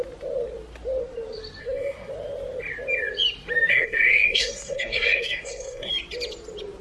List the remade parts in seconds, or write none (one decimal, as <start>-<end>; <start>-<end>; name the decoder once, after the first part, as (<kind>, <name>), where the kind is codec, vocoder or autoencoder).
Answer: 1.6-2.1 (codec, SNAC); 3.7-5.9

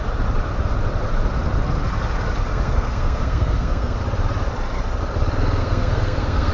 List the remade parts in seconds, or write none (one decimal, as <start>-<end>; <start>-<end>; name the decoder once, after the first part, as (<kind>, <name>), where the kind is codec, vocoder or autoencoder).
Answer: 2.4-4.0 (codec, SNAC); 5.6-6.5

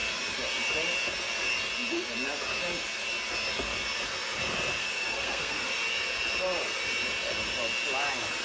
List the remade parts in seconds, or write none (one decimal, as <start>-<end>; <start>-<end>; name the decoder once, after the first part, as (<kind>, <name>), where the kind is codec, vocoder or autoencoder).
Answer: 4.8-5.7 (codec, SNAC)

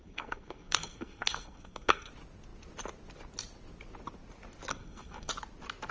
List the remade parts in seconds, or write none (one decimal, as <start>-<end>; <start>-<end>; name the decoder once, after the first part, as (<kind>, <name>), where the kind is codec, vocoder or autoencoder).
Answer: 0.0-2.1 (codec, SNAC); 4.7-5.3